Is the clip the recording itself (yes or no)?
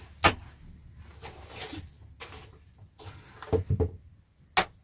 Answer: yes